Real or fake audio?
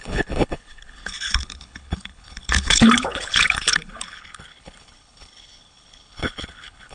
fake